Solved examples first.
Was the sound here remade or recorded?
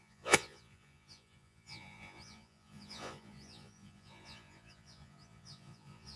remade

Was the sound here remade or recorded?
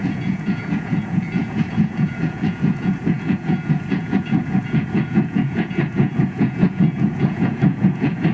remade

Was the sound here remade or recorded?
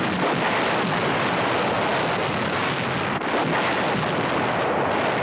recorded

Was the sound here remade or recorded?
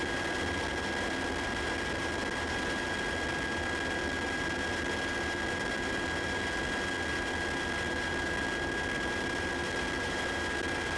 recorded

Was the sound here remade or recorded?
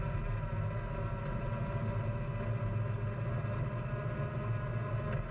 recorded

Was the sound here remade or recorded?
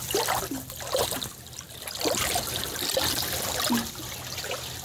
recorded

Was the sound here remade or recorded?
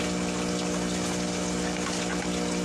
recorded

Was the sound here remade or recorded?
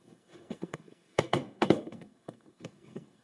remade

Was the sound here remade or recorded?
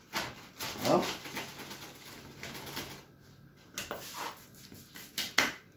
recorded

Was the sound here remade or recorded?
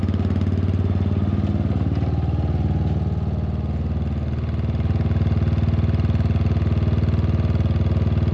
recorded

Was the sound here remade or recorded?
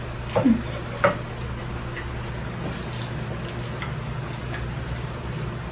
recorded